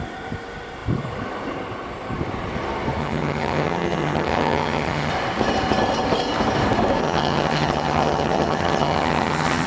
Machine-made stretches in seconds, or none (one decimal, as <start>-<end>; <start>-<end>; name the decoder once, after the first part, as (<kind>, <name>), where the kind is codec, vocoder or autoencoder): 3.0-5.1 (vocoder, HiFi-GAN); 7.0-9.7